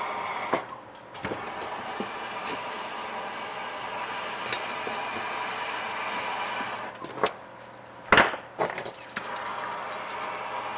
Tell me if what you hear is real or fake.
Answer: real